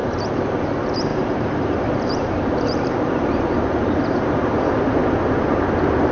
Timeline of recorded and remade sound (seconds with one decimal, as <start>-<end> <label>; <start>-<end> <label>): 0.0-5.0 remade; 5.0-5.5 recorded; 5.5-6.1 remade